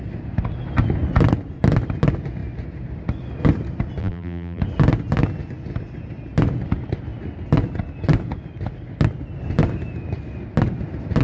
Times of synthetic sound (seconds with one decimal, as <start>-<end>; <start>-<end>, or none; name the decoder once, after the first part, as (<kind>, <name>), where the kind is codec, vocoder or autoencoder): 4.0-4.6 (vocoder, BigVGAN v2)